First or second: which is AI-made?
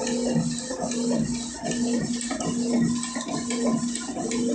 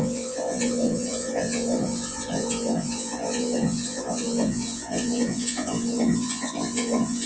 second